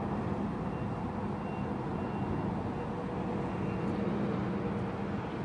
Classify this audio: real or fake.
real